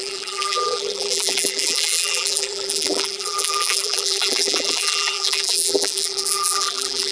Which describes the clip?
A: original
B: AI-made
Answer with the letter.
B